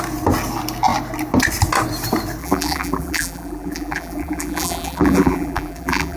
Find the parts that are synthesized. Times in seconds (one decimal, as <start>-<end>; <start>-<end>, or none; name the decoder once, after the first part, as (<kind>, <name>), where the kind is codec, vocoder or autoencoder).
2.4-6.2 (vocoder, BigVGAN v2)